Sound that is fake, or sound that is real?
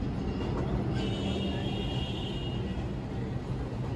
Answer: real